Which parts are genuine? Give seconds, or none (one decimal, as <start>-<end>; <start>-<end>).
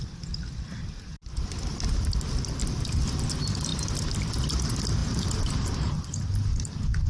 0.0-7.1